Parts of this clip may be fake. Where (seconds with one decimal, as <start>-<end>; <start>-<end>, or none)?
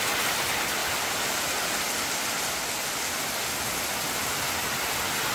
none